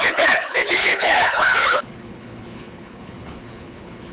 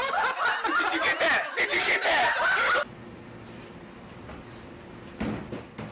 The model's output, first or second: first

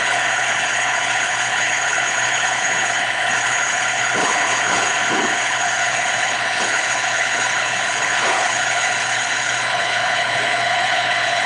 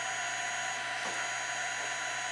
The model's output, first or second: first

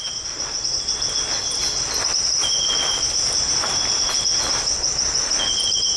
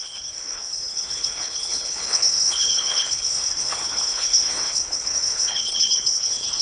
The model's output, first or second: second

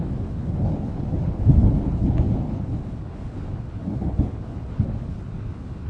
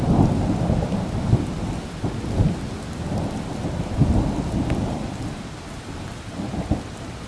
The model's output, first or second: first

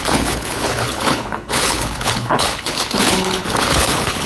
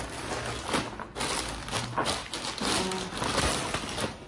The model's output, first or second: first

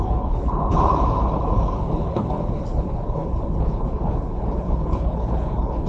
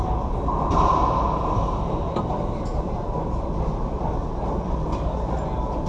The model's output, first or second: first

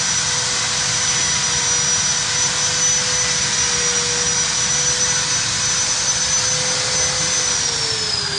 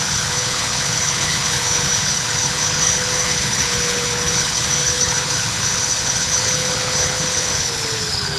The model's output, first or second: second